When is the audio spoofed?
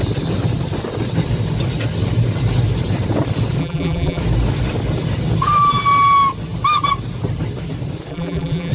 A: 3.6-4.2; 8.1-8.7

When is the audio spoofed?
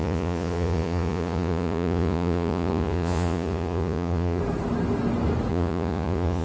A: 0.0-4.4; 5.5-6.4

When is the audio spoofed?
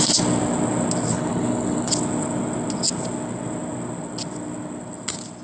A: 1.1-1.9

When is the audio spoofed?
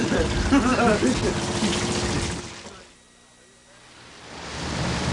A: 0.0-0.7; 1.4-5.1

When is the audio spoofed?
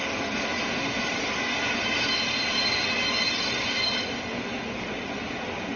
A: none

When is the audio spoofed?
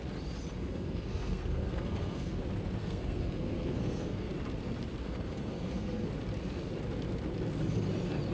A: 0.6-2.4; 2.8-4.3; 5.0-6.1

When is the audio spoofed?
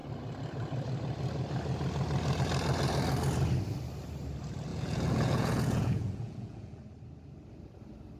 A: 4.7-6.8